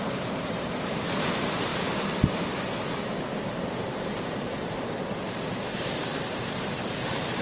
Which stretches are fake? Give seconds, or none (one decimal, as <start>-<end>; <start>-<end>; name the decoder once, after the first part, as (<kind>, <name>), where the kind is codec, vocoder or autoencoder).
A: 0.0-7.4 (vocoder, BigVGAN v2)